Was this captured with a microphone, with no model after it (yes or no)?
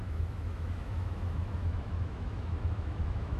no